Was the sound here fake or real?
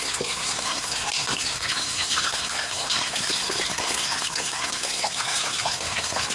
fake